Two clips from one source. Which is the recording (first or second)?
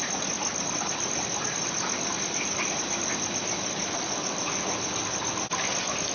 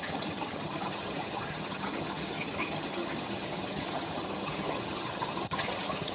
first